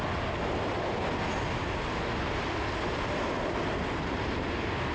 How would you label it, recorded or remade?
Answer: recorded